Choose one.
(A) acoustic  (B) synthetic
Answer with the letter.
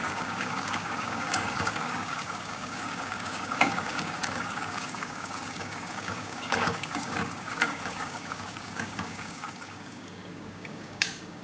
B